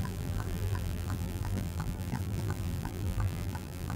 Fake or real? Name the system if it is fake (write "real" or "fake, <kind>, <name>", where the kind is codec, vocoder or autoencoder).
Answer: fake, vocoder, BigVGAN v2